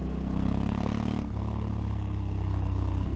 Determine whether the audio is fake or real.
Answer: fake